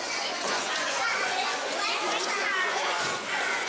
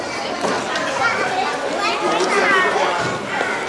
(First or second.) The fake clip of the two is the first